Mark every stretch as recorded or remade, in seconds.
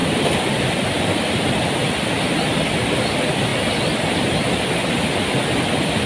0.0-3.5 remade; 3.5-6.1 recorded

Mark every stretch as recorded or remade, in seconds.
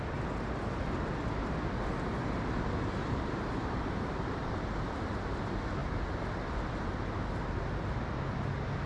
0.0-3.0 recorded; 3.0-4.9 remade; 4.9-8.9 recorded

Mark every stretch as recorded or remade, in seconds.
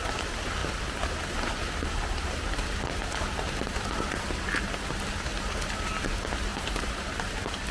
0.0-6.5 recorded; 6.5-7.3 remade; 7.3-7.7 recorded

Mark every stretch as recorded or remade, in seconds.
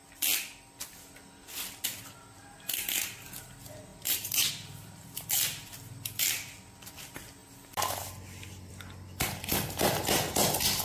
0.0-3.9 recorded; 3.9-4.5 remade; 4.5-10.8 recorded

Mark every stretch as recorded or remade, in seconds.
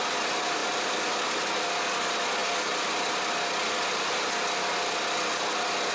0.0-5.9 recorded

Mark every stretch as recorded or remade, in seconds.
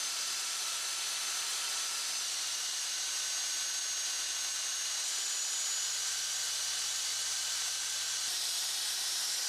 0.0-7.1 recorded; 7.1-7.6 remade; 7.6-9.5 recorded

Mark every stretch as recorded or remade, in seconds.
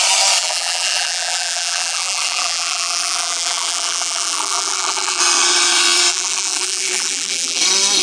0.0-0.4 recorded; 0.4-5.2 remade; 5.2-6.1 recorded; 6.1-7.6 remade; 7.6-8.0 recorded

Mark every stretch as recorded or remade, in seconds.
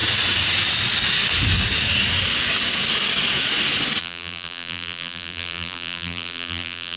0.0-4.0 recorded; 4.0-7.0 remade